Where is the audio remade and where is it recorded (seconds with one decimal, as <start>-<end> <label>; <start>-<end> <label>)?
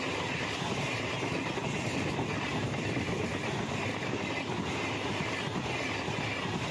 0.0-0.4 recorded; 0.4-4.4 remade; 4.4-6.7 recorded